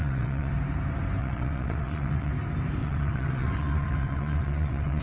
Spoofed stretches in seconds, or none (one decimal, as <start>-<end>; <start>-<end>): 0.0-0.5; 1.2-2.3; 2.8-5.0